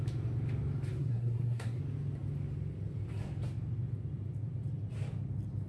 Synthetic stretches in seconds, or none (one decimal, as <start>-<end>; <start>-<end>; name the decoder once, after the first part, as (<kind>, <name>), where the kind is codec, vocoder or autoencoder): 1.0-1.8 (codec, SNAC)